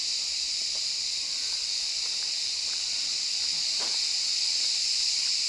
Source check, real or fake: fake